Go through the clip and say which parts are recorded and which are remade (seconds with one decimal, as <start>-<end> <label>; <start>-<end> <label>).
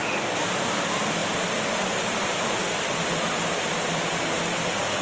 0.0-1.2 recorded; 1.2-4.2 remade; 4.2-5.0 recorded